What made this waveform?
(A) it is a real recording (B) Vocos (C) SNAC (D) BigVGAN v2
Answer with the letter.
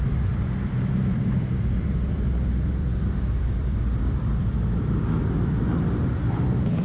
D